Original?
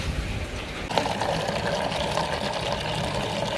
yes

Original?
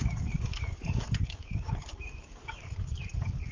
no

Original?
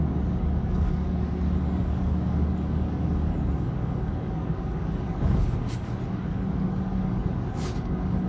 no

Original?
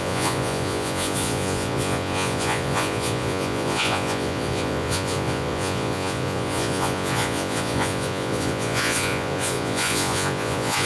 no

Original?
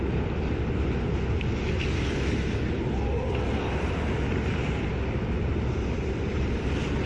no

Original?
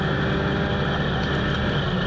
yes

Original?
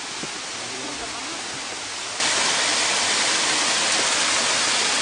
yes